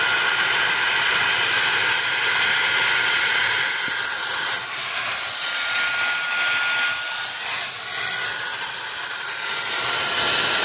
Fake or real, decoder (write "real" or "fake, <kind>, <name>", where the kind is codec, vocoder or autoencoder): real